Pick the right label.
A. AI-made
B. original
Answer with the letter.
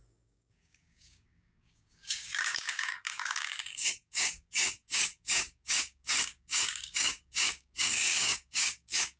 A